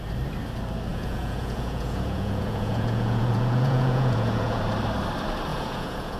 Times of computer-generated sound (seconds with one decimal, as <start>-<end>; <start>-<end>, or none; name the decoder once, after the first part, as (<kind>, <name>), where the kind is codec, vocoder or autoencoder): 0.9-4.6 (vocoder, Vocos); 5.5-6.2